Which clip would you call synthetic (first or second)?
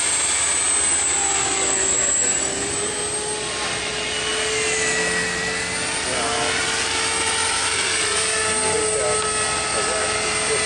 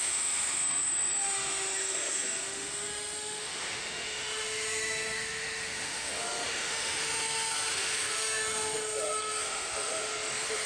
second